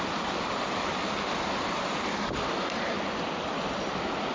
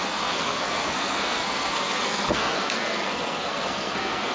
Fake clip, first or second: second